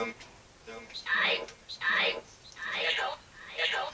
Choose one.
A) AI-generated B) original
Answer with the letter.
B